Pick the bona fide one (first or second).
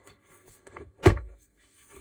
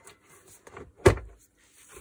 second